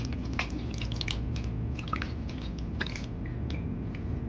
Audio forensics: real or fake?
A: real